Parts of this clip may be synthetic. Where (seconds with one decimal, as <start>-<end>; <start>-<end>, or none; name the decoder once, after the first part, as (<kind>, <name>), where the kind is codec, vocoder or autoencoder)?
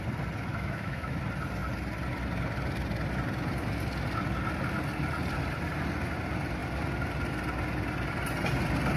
0.5-1.2 (autoencoder, DAC-VAE)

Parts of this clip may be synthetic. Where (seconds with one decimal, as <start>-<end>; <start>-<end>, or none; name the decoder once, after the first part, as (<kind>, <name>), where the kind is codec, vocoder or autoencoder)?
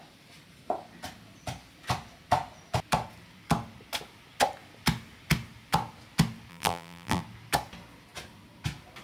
6.5-7.2 (vocoder, BigVGAN v2)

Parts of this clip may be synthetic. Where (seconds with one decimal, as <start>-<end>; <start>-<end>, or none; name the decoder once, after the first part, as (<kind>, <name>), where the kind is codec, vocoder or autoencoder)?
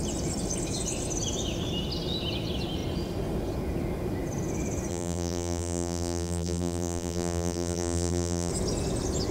4.9-8.5 (vocoder, BigVGAN v2)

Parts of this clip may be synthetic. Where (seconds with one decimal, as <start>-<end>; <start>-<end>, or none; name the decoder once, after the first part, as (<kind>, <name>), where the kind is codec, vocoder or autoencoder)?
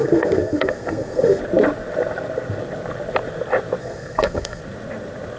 0.0-1.4 (codec, SNAC); 3.8-4.6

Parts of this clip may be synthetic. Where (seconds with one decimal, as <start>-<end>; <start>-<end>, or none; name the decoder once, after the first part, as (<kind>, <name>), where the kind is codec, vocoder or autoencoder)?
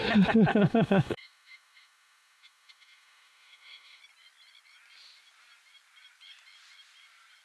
0.5-4.0 (autoencoder, DAC-VAE)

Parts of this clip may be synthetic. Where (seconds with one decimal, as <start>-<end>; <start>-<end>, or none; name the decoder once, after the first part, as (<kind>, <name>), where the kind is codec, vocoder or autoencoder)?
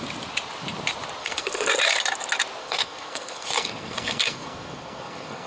1.2-1.7 (codec, SNAC); 2.6-5.5